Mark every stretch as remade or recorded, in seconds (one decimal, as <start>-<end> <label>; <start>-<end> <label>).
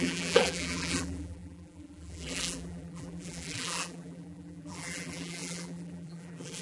0.0-6.6 remade